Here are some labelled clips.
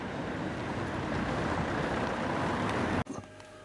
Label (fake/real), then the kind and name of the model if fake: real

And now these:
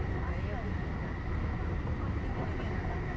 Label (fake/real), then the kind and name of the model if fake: real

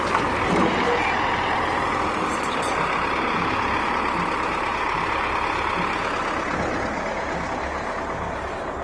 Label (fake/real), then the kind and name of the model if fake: real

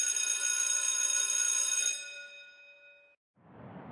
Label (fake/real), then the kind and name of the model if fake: real